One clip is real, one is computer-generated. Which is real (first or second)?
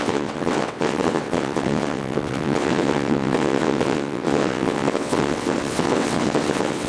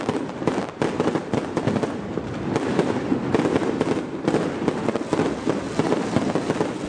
second